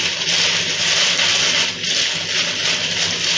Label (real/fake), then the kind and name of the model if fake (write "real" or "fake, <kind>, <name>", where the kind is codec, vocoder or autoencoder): real